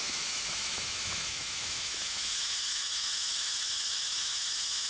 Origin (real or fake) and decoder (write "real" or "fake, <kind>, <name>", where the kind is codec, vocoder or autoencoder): fake, autoencoder, DAC-VAE